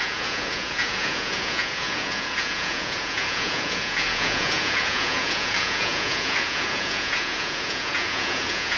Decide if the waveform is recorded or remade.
remade